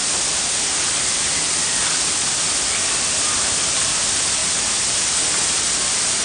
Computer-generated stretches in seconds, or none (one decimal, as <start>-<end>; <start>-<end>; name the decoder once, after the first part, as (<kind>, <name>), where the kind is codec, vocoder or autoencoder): none